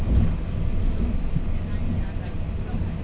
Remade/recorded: recorded